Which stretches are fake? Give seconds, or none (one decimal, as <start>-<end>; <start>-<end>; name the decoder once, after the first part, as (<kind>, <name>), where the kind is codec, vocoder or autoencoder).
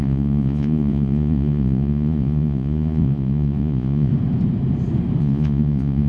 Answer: 0.0-4.1 (vocoder, Vocos); 5.2-6.1